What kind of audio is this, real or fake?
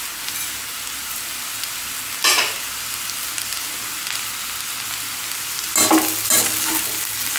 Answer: real